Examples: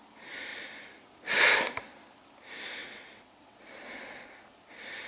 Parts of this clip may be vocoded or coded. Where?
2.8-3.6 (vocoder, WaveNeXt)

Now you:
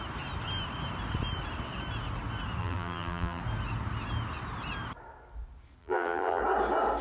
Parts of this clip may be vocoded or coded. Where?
2.6-3.4 (vocoder, BigVGAN v2); 5.8-6.4

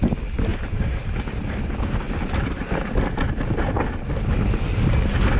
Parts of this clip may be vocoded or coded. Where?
none

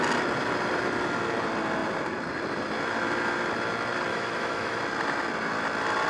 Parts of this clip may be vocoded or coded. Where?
4.1-4.8 (autoencoder, DAC-VAE)

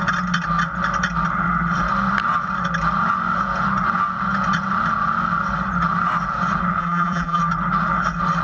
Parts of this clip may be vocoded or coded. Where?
6.8-7.4 (vocoder, BigVGAN v2)

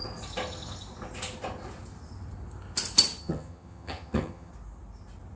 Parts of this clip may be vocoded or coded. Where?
3.2-4.5 (vocoder, HiFi-GAN)

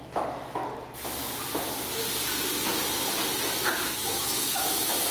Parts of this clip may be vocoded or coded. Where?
0.0-0.6 (autoencoder, DAC-VAE); 3.7-5.1

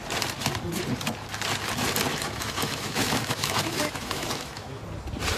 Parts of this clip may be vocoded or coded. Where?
2.1-4.8 (autoencoder, DAC-VAE)